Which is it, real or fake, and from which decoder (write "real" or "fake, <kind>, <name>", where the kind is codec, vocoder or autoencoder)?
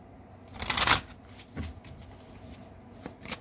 real